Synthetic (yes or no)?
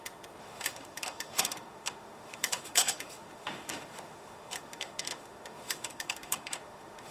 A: yes